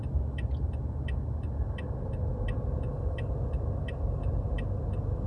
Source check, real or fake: real